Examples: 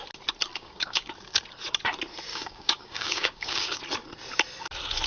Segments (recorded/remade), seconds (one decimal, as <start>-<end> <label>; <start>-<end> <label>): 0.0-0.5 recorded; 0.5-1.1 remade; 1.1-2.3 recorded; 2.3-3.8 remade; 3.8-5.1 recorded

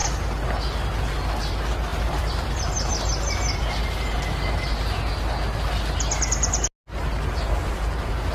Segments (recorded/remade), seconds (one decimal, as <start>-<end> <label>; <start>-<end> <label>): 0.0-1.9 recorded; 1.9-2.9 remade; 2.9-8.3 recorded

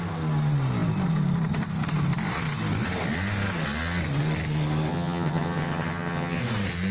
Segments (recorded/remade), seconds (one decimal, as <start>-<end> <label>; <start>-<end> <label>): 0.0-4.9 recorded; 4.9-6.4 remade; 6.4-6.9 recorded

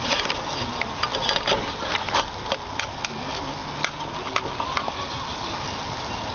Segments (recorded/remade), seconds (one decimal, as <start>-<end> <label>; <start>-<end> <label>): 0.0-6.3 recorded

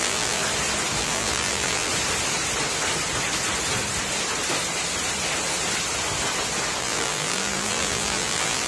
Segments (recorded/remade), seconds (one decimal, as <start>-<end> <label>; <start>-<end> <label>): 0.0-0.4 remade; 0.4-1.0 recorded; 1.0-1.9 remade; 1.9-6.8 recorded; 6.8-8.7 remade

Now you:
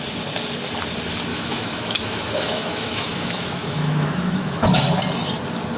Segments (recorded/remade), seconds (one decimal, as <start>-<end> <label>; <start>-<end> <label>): 0.0-1.3 recorded; 1.3-4.8 remade; 4.8-5.8 recorded